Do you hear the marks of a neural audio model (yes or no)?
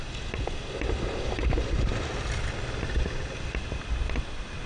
no